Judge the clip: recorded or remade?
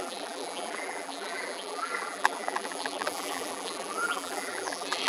remade